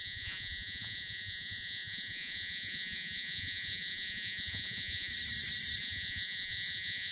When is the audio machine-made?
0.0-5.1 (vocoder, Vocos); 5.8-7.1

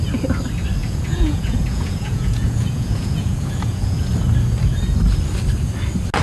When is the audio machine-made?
0.8-4.0 (vocoder, Vocos)

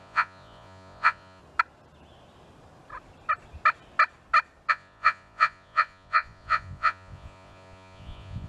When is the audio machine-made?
0.0-1.4 (vocoder, Vocos); 4.7-8.5